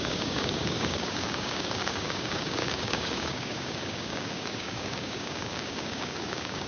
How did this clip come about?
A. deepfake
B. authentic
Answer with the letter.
A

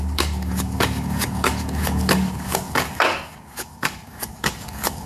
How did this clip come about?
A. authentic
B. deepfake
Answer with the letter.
B